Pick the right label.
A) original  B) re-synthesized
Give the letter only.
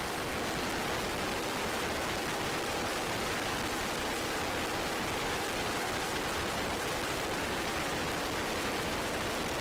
A